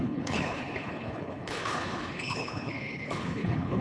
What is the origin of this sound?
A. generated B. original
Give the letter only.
A